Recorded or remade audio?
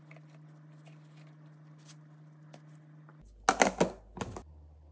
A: recorded